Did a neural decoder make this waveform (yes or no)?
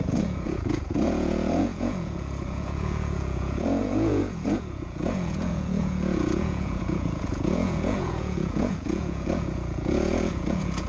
yes